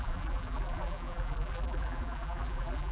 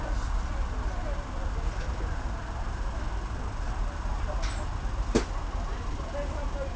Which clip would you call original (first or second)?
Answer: second